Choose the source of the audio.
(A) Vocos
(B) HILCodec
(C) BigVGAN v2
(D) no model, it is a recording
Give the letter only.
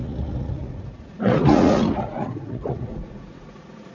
A